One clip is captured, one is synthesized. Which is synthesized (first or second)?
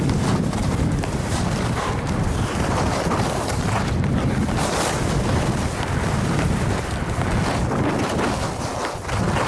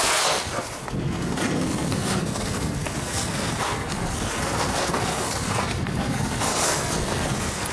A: second